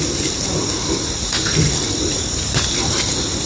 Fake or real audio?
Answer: real